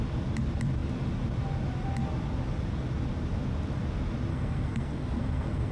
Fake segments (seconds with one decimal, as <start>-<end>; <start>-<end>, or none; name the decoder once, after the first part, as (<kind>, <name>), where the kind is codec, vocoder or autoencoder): 4.3-5.7 (codec, SNAC)